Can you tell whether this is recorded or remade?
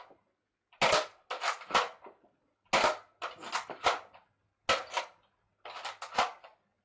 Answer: recorded